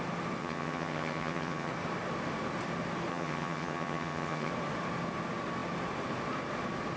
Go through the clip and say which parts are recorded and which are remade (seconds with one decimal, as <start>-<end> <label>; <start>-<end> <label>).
0.0-0.4 recorded; 0.4-1.7 remade; 1.7-3.1 recorded; 3.1-4.5 remade; 4.5-7.0 recorded